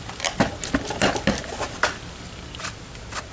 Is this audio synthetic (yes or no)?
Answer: no